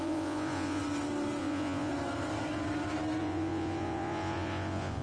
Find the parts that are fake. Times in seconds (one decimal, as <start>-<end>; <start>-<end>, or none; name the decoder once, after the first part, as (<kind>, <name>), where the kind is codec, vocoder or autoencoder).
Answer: 0.0-0.8 (vocoder, Vocos); 1.4-1.9; 3.2-5.0